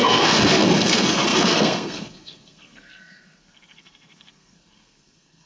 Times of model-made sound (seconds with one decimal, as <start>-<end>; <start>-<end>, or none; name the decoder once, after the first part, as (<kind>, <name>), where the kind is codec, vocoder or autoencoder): 0.0-5.5 (codec, SNAC)